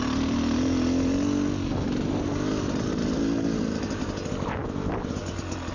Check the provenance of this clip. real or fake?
real